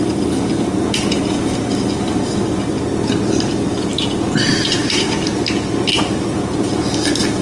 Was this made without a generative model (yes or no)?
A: yes